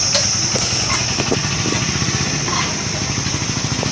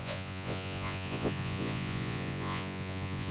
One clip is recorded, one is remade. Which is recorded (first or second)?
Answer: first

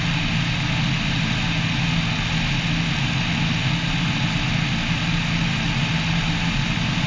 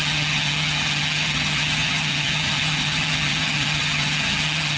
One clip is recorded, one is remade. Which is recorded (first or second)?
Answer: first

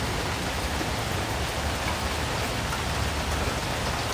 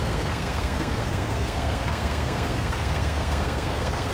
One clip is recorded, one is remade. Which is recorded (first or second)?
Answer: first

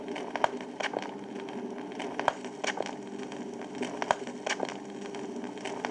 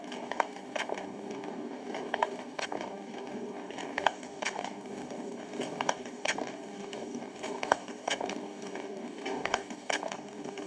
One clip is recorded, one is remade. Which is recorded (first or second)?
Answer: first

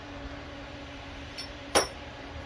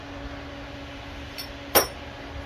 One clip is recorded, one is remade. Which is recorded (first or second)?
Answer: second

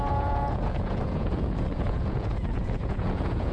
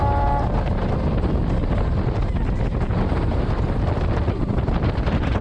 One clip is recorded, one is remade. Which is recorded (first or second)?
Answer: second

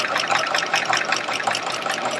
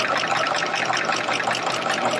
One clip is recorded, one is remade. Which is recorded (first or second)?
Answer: second